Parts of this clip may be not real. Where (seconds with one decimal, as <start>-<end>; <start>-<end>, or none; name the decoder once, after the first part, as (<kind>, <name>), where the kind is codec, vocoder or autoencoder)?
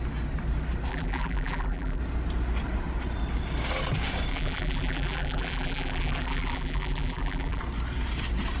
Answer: 0.9-2.0 (vocoder, BigVGAN v2); 4.3-7.6